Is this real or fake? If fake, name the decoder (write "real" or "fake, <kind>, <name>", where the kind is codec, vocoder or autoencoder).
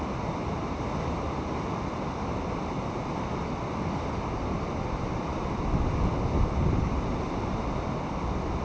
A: real